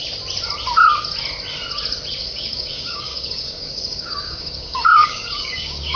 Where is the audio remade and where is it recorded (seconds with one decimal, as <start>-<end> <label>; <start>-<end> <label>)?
0.0-2.2 recorded; 2.2-6.0 remade